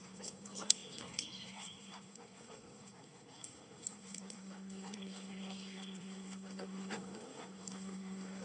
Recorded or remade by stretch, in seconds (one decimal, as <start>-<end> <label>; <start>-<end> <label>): 0.0-8.4 remade

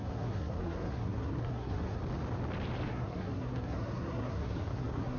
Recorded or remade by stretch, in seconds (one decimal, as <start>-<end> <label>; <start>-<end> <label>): 0.0-2.0 remade; 2.0-2.9 recorded; 2.9-5.2 remade